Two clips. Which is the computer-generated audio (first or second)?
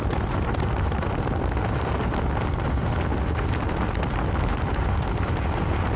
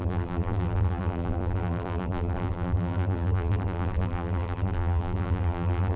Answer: second